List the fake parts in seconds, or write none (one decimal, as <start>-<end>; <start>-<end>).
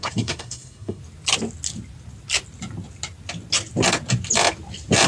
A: 0.0-1.0